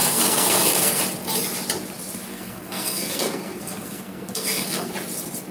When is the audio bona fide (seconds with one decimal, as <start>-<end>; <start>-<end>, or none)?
1.0-2.3; 4.9-5.5